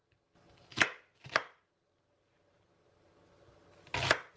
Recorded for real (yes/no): yes